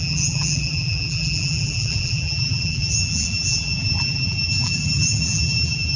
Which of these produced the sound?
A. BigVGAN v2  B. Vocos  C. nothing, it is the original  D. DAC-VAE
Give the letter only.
A